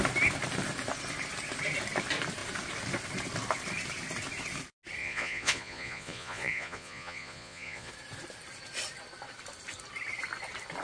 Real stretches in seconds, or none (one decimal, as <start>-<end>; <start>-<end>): 0.0-5.0; 7.9-10.8

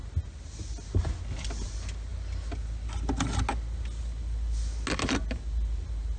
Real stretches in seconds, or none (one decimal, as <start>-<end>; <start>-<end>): 0.0-6.2